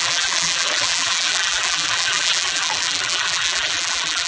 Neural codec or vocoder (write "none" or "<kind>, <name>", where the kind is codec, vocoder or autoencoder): vocoder, BigVGAN v2